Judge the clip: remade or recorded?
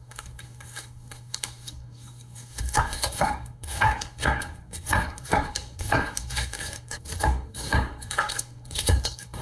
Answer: remade